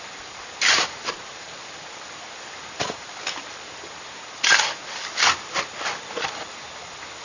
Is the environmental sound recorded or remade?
recorded